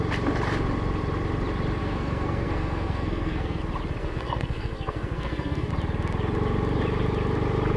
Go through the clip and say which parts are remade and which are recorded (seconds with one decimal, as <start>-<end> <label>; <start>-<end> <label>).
0.0-1.8 recorded; 1.8-3.6 remade; 3.6-4.0 recorded; 4.0-5.7 remade; 5.7-7.8 recorded